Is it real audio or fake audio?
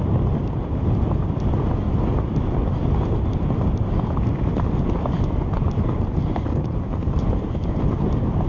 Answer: real